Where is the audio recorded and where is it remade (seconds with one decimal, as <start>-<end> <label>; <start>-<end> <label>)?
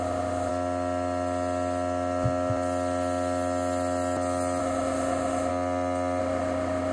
0.0-0.5 remade; 0.5-4.6 recorded; 4.6-5.5 remade; 5.5-6.2 recorded; 6.2-6.9 remade